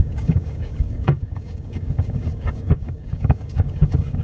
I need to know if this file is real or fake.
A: fake